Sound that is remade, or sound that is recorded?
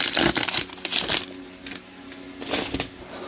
recorded